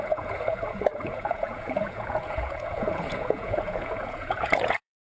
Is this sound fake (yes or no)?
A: yes